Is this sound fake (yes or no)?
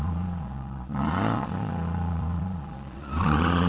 yes